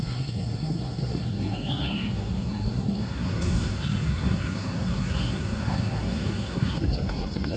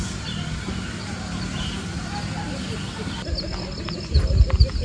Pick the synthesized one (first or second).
first